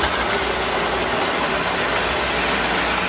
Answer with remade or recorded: recorded